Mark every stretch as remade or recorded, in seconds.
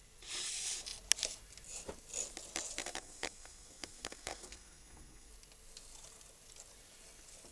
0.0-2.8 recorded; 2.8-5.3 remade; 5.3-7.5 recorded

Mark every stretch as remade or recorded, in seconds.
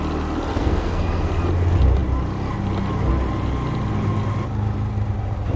0.0-0.5 recorded; 0.5-1.3 remade; 1.3-5.6 recorded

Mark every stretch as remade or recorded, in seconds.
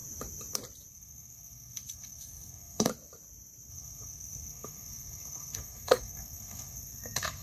0.0-0.9 recorded; 0.9-2.9 remade; 2.9-3.7 recorded; 3.7-7.4 remade